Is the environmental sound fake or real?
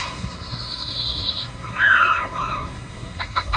fake